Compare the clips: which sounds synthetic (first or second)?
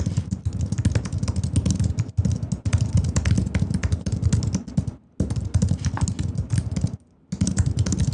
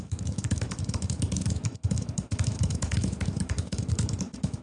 second